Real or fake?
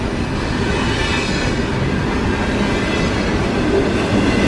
real